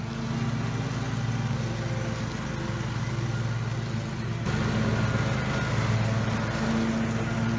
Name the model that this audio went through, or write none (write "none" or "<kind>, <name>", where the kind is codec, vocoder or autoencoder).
none